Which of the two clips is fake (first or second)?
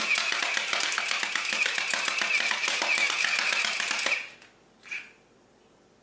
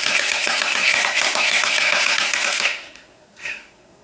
second